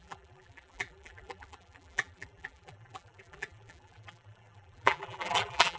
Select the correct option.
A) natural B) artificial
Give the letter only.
B